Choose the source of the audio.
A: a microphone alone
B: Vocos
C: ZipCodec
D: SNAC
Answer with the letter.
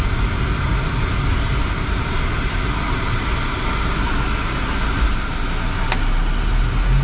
A